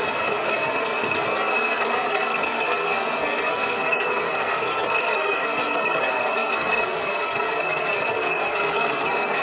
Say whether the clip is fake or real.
fake